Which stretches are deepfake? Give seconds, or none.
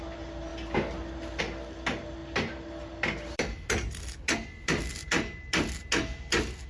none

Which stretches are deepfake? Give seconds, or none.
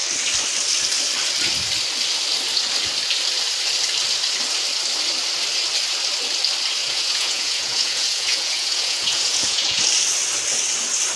6.8-9.8 (vocoder, Vocos)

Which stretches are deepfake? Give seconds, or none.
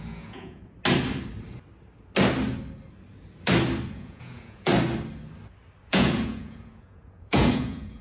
0.0-0.6 (vocoder, Vocos); 3.9-4.7; 5.9-8.0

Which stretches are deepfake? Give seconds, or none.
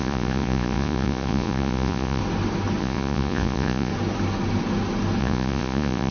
0.0-2.2 (vocoder, Vocos); 2.8-3.9; 5.2-6.1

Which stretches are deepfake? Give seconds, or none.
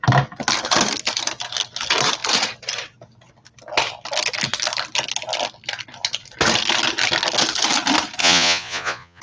8.2-9.2 (vocoder, Vocos)